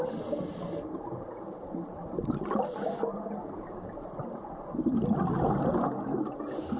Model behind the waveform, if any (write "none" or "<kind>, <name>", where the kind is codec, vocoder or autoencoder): none